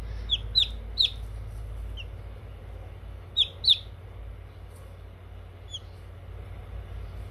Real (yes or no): yes